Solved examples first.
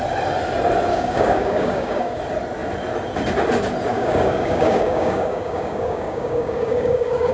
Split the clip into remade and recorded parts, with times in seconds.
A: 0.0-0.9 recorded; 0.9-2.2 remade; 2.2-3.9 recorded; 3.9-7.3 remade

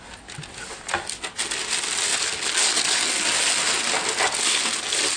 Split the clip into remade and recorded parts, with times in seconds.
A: 0.0-5.2 recorded

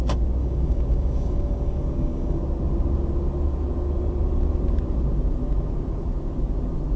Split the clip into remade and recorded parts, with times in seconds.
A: 0.0-0.4 recorded; 0.4-2.4 remade; 2.4-7.0 recorded

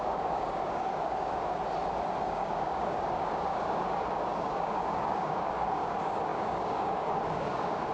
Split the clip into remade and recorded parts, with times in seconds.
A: 0.0-1.6 remade; 1.6-2.2 recorded; 2.2-7.9 remade

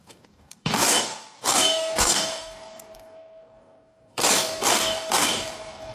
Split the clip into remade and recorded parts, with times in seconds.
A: 0.0-5.9 remade

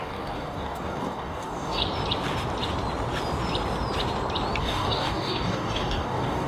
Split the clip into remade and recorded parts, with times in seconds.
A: 0.0-1.8 remade; 1.8-4.6 recorded; 4.6-6.5 remade